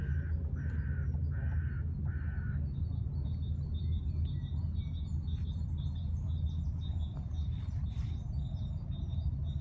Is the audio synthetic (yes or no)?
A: no